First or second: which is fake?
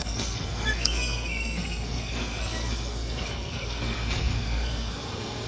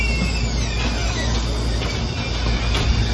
first